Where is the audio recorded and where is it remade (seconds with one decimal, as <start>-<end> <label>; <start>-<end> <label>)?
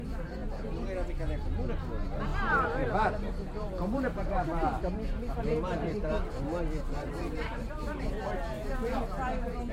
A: 0.0-2.3 recorded; 2.3-6.4 remade; 6.4-7.2 recorded; 7.2-8.1 remade; 8.1-9.7 recorded